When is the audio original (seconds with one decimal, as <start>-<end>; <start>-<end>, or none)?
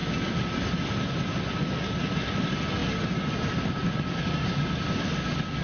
0.0-5.6